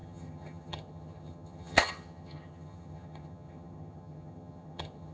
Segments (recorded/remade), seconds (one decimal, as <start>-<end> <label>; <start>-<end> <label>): 0.0-5.1 remade